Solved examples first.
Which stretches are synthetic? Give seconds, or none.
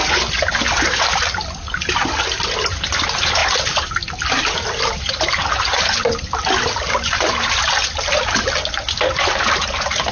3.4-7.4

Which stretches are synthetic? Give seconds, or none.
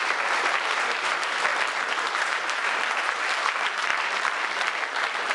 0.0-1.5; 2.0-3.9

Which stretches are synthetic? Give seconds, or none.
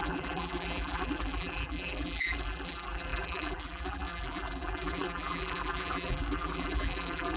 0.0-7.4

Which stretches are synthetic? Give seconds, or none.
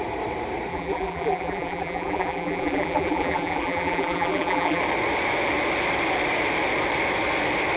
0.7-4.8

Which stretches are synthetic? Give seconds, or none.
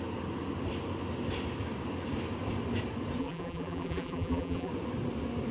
3.2-4.7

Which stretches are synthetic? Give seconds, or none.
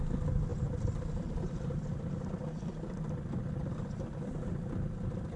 0.5-3.7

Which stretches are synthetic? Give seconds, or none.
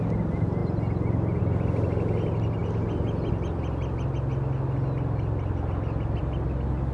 none